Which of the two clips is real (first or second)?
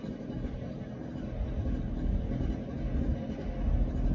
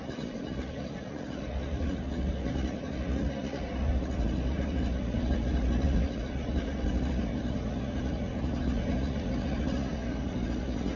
first